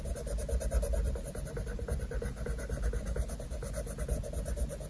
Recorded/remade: recorded